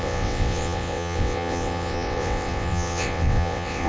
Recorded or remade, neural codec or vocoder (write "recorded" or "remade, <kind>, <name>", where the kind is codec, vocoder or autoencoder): remade, vocoder, WaveNeXt